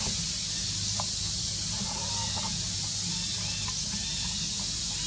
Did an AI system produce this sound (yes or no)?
no